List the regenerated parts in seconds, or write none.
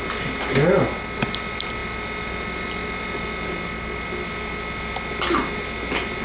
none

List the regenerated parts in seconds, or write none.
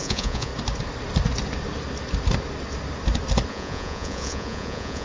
0.0-0.5 (vocoder, Vocos); 3.5-5.0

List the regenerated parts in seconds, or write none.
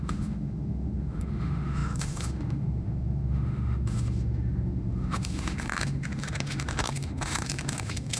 0.0-8.2 (autoencoder, DAC-VAE)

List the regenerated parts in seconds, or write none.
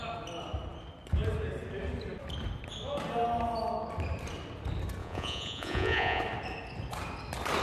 5.0-6.2 (vocoder, Vocos)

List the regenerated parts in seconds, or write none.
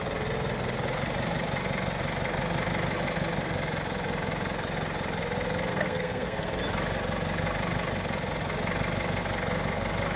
5.7-6.6 (codec, SNAC)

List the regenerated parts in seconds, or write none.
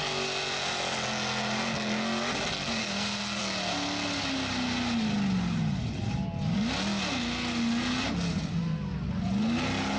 2.8-3.4 (codec, SNAC)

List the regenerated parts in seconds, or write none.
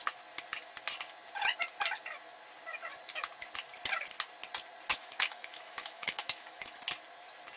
4.9-6.8 (autoencoder, DAC-VAE)